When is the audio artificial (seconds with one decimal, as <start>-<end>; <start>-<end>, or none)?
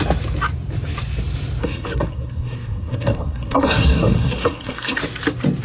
1.6-5.0